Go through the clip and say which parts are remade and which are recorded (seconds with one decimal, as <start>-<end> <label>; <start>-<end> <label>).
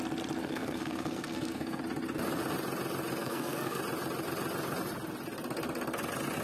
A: 0.0-0.4 recorded; 0.4-1.8 remade; 1.8-3.2 recorded; 3.2-3.8 remade; 3.8-6.4 recorded